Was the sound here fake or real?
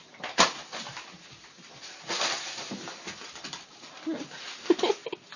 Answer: real